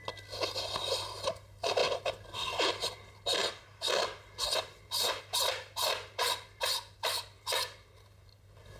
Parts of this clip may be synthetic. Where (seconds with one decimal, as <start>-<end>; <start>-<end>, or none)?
none